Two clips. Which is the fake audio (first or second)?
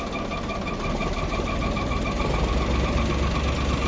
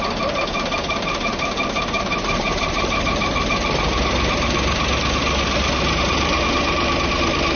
second